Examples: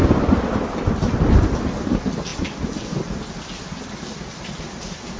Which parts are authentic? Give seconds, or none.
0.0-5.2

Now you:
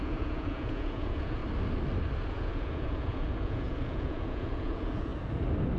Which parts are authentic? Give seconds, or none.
1.4-2.3; 5.1-5.8

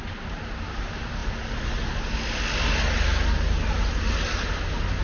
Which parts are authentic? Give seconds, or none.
0.0-5.0